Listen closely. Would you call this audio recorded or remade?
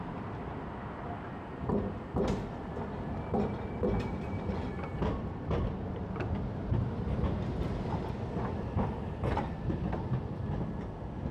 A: recorded